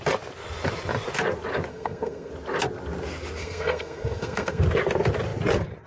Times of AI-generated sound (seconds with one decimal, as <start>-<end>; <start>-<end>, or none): 1.7-2.3; 3.4-4.6